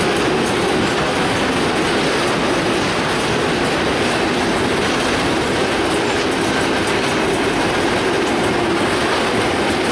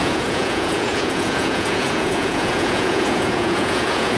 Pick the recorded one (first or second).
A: first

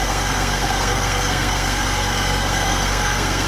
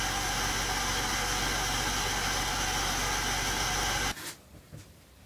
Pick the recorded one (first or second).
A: second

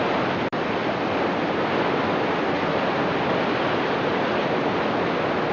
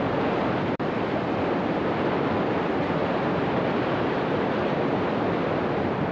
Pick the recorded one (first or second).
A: first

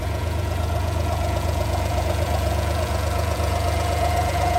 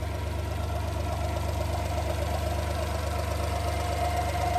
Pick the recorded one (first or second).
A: second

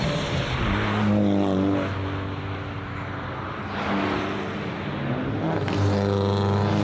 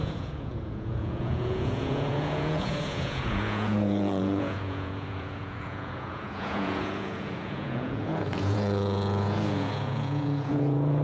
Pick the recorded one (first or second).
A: first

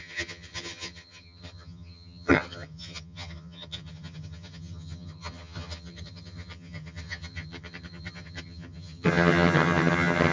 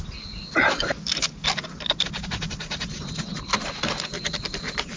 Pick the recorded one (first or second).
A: second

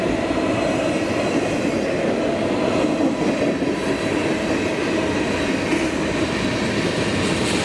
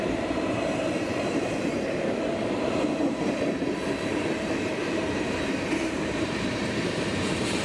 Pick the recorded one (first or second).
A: first